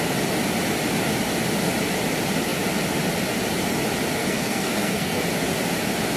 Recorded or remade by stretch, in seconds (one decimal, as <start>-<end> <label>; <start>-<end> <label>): 0.0-4.2 recorded; 4.2-5.2 remade; 5.2-6.2 recorded